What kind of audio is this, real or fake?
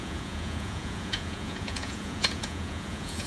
fake